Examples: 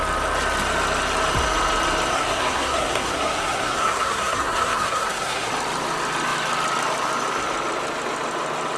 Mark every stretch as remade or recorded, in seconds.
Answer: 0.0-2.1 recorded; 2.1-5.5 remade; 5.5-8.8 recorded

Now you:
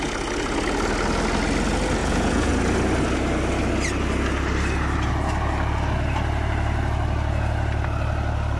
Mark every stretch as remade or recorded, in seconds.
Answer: 0.0-2.0 recorded; 2.0-2.5 remade; 2.5-8.6 recorded

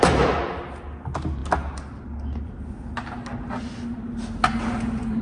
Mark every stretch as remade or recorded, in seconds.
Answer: 0.0-5.2 recorded